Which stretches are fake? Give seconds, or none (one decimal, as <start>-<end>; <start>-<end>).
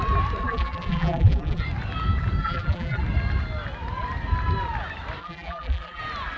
0.4-1.6; 2.4-3.0; 5.2-6.0